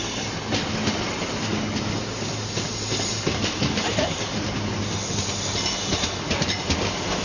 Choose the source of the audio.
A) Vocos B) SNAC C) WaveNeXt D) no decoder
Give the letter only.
D